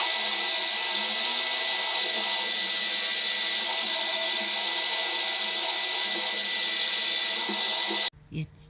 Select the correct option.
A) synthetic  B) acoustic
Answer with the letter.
B